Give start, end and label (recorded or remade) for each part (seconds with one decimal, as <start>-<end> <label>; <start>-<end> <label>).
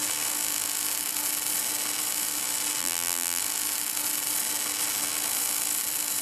0.0-2.8 recorded; 2.8-3.4 remade; 3.4-6.2 recorded